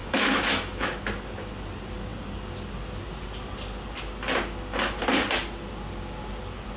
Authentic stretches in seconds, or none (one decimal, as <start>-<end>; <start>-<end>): 0.9-6.8